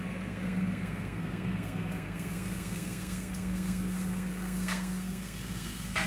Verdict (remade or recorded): remade